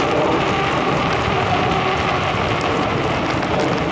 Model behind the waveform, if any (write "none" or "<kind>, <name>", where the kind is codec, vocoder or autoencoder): none